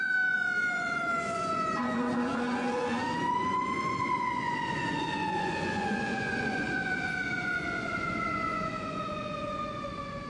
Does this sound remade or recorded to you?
remade